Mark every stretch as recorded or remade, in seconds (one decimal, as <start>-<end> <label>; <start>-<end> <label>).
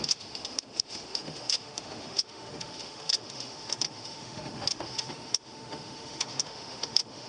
0.0-7.3 remade